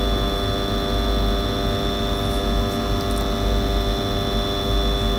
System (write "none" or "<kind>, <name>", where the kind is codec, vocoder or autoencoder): none